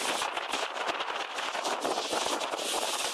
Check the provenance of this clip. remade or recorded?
recorded